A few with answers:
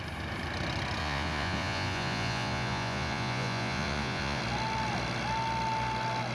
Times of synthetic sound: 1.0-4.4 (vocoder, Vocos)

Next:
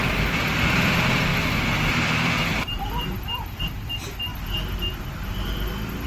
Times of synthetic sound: 0.0-1.3 (vocoder, BigVGAN v2); 1.9-4.3

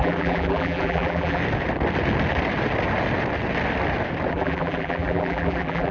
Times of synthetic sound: 0.0-1.4 (vocoder, BigVGAN v2); 4.3-5.9

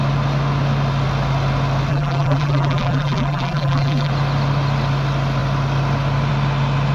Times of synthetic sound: 1.9-4.1 (vocoder, BigVGAN v2)

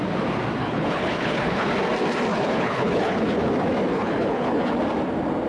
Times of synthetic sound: 0.6-1.7 (codec, HILCodec); 2.3-3.5; 3.9-4.7